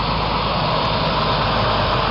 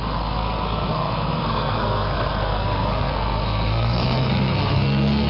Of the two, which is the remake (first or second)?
second